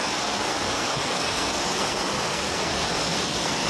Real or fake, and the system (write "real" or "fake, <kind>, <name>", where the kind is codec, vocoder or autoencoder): fake, codec, SNAC